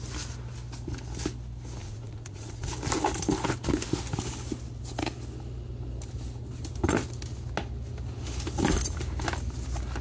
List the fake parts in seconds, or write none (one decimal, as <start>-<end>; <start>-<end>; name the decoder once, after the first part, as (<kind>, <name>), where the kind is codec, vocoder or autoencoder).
1.8-2.7 (vocoder, Vocos)